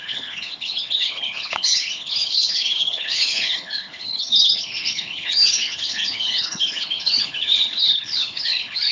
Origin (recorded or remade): remade